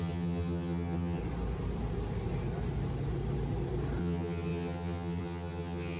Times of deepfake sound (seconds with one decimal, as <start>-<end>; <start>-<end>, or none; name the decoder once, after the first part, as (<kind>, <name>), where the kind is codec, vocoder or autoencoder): 0.0-1.2 (vocoder, HiFi-GAN); 4.0-6.0